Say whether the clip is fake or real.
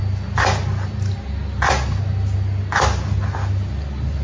real